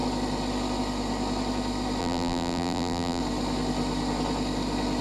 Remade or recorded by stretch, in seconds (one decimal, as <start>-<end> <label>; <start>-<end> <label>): 0.0-2.0 recorded; 2.0-3.2 remade; 3.2-5.0 recorded